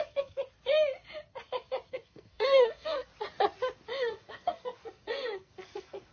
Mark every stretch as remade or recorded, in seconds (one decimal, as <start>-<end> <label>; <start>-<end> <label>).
0.0-0.4 remade; 0.4-1.9 recorded; 1.9-3.1 remade; 3.1-4.0 recorded; 4.0-6.1 remade